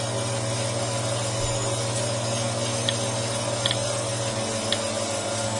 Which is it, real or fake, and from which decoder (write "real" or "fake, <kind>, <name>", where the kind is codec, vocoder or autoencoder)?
real